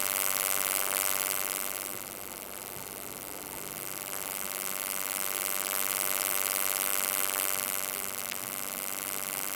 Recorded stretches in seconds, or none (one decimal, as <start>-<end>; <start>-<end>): 0.0-9.6